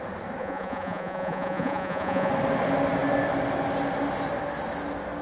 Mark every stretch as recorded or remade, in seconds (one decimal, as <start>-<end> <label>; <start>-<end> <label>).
0.0-0.4 recorded; 0.4-2.3 remade; 2.3-5.2 recorded